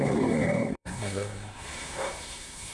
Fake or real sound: fake